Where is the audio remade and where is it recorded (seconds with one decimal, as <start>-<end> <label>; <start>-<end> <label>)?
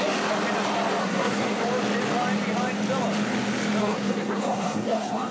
0.0-1.0 recorded; 1.0-1.6 remade; 1.6-3.8 recorded; 3.8-5.3 remade